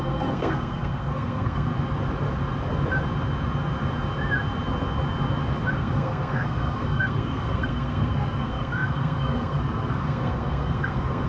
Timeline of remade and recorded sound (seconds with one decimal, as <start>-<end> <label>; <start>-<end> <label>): 0.0-1.7 remade; 1.7-5.7 recorded; 5.7-11.3 remade